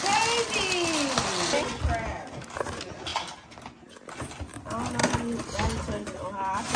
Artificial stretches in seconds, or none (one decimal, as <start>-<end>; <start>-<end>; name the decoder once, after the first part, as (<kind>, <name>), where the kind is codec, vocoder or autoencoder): none